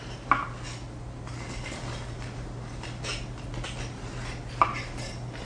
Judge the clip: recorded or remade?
recorded